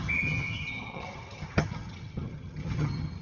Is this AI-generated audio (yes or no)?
yes